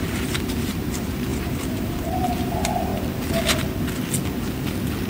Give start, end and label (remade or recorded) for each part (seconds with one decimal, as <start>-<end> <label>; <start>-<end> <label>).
0.0-2.9 remade; 2.9-5.1 recorded

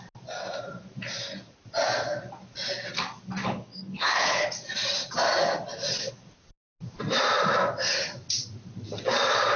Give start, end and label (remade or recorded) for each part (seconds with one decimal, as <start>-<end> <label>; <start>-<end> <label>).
0.0-3.4 recorded; 3.4-4.4 remade; 4.4-9.6 recorded

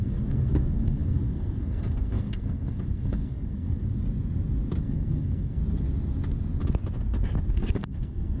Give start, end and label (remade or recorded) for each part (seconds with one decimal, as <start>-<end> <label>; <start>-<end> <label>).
0.0-3.9 remade; 3.9-4.8 recorded; 4.8-5.6 remade; 5.6-7.5 recorded; 7.5-8.4 remade

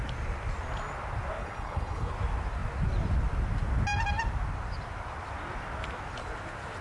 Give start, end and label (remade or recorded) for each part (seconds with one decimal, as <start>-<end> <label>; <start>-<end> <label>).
0.0-1.4 recorded; 1.4-2.1 remade; 2.1-6.8 recorded